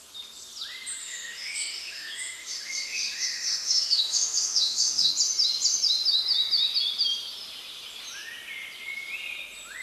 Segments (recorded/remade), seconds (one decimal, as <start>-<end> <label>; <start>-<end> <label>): 0.0-1.0 recorded; 1.0-5.1 remade; 5.1-9.8 recorded